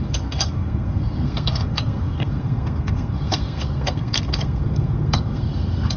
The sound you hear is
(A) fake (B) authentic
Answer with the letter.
A